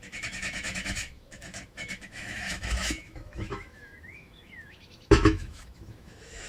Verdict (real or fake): fake